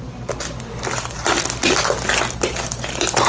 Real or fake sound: real